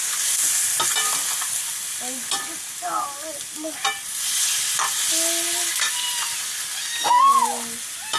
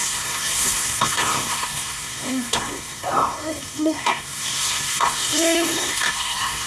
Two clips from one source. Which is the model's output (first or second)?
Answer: second